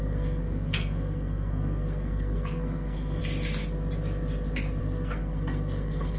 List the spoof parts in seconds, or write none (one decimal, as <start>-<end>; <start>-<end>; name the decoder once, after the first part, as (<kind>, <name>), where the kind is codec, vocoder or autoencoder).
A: 0.0-3.2 (codec, SNAC); 4.8-6.2